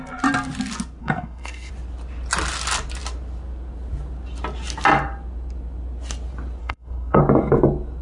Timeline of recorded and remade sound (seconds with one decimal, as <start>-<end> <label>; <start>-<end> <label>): 0.0-1.0 recorded; 1.0-1.7 remade; 1.7-6.6 recorded; 6.6-7.2 remade; 7.2-8.0 recorded